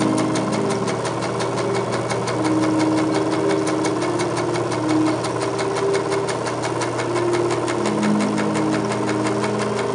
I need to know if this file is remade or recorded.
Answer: recorded